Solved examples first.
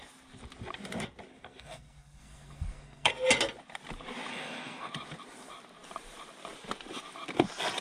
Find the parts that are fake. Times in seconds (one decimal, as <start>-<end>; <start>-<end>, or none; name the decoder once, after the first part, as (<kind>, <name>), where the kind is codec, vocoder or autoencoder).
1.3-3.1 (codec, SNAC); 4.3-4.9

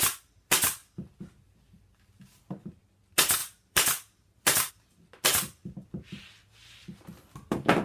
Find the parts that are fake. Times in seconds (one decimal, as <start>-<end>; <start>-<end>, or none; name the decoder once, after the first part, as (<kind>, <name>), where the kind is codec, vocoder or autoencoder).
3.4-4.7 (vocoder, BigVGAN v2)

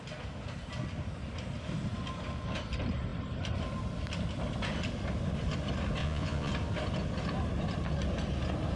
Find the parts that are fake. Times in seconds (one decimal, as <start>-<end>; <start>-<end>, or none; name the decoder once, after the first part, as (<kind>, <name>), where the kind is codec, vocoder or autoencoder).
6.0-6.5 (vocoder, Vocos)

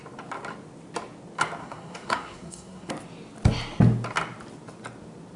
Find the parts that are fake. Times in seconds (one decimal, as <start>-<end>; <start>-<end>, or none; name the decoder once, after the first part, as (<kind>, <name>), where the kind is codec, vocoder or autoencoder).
1.6-2.9 (codec, SNAC)